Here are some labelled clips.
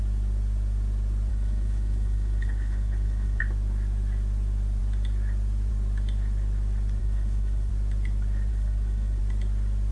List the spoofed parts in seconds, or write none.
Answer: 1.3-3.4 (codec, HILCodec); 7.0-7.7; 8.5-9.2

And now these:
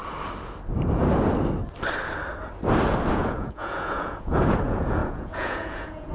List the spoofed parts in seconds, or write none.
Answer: 3.1-6.1 (vocoder, Vocos)

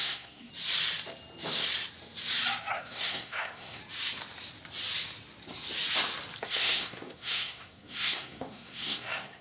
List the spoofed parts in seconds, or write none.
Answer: 0.0-0.5 (codec, SNAC); 2.7-3.8; 6.4-9.4

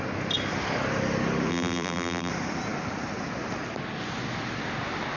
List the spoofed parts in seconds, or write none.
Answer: 1.5-2.3 (vocoder, BigVGAN v2)